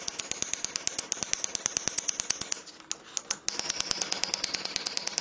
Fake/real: real